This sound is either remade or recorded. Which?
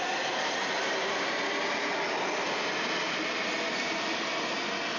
recorded